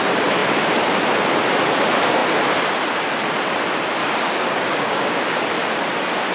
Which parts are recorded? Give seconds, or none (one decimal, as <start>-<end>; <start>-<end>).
0.0-4.0; 5.5-6.3

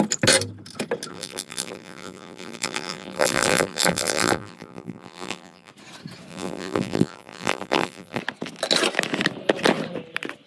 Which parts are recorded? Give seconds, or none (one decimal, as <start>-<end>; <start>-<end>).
0.0-1.1; 5.7-6.3; 8.2-10.5

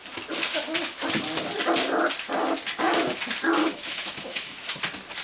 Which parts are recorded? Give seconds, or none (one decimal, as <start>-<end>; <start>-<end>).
0.0-3.6; 4.8-5.2

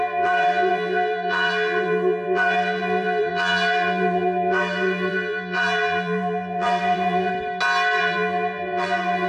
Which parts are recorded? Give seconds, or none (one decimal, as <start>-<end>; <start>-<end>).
7.3-8.0